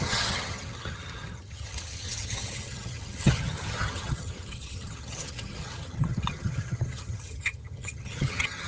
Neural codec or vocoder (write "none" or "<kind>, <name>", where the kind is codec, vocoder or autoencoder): vocoder, HiFi-GAN